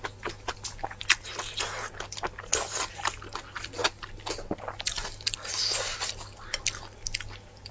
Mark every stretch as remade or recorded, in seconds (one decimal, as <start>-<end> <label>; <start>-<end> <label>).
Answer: 0.0-7.7 recorded

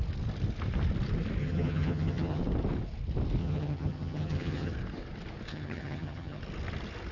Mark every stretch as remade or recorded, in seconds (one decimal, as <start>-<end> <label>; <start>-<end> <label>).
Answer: 0.0-1.4 recorded; 1.4-2.4 remade; 2.4-3.4 recorded; 3.4-4.7 remade; 4.7-5.5 recorded; 5.5-6.4 remade; 6.4-7.1 recorded

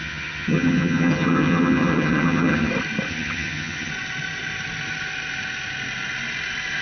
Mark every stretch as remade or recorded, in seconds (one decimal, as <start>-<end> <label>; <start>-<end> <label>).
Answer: 0.0-2.7 remade; 2.7-3.1 recorded; 3.1-3.9 remade; 3.9-6.8 recorded

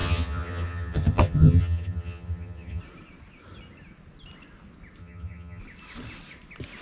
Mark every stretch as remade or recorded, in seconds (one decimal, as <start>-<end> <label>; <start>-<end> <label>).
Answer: 0.0-2.8 remade; 2.8-5.0 recorded; 5.0-5.6 remade; 5.6-6.8 recorded

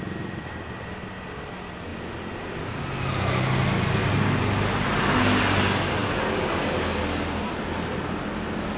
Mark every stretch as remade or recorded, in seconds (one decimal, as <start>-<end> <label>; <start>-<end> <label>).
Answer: 0.0-8.8 recorded

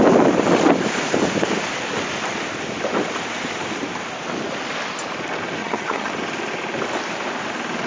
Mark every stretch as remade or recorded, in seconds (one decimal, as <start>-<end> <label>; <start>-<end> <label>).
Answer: 0.0-5.6 recorded; 5.6-6.1 remade; 6.1-7.9 recorded